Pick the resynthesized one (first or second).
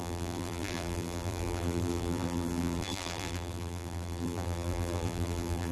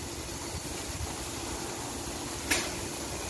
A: first